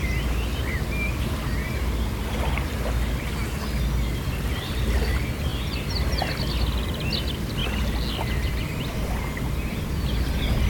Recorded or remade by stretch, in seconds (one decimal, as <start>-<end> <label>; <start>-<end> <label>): 0.0-10.7 recorded